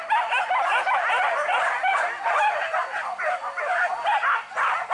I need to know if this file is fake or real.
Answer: real